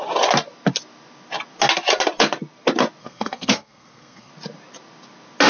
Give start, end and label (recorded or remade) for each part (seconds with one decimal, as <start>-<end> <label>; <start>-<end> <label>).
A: 0.0-3.0 recorded; 3.0-4.3 remade; 4.3-5.5 recorded